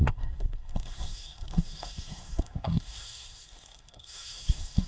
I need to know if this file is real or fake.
fake